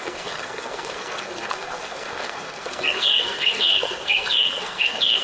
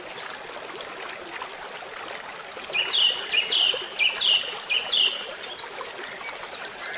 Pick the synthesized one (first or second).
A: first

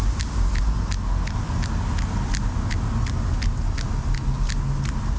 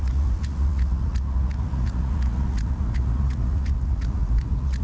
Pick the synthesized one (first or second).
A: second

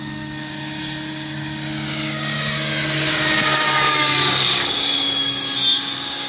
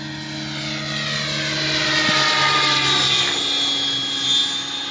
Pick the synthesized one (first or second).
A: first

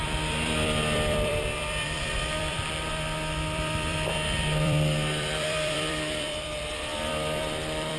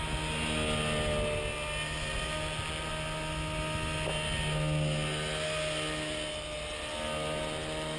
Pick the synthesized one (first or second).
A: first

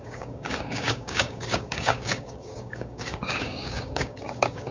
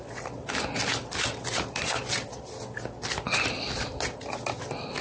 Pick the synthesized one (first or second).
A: first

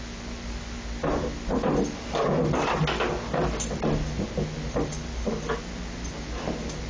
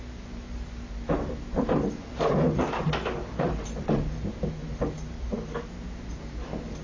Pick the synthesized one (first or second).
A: second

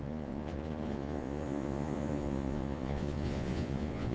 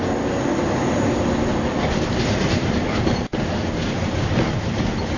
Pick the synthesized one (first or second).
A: first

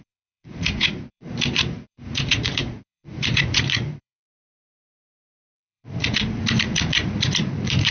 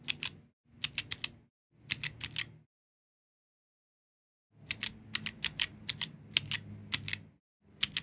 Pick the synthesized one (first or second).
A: first